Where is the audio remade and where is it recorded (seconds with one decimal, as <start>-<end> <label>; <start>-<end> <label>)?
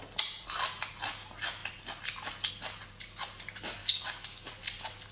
0.0-3.8 recorded; 3.8-4.5 remade; 4.5-5.1 recorded